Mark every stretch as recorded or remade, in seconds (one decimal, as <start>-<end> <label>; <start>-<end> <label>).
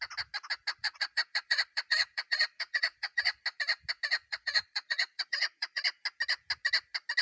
0.0-0.8 recorded; 0.8-3.2 remade; 3.2-4.3 recorded; 4.3-5.8 remade; 5.8-7.2 recorded